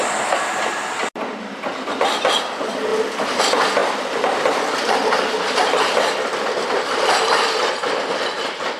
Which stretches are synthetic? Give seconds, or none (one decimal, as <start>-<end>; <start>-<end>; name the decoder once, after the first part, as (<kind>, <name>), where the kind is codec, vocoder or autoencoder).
none